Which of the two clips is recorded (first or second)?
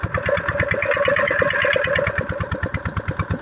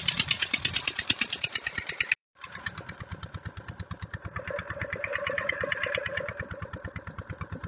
first